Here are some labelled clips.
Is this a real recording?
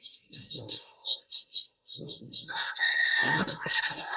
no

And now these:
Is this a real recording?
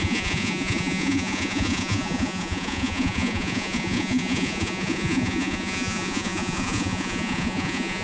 no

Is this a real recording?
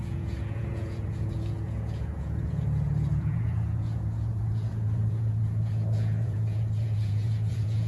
no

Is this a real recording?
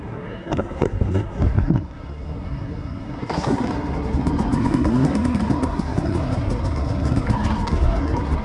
no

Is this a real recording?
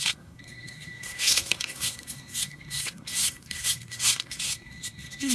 no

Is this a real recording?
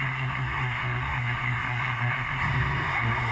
no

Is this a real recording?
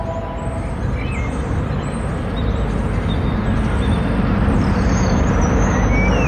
yes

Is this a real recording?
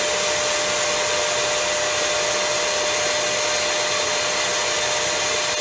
yes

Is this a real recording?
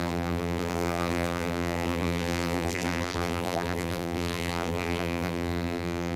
no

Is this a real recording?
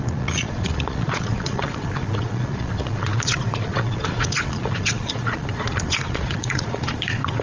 no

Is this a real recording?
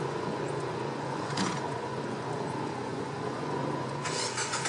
no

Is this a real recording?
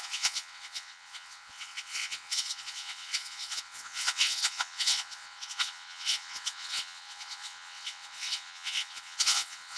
no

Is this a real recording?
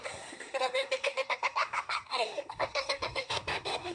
no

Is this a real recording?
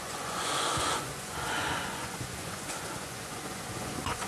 no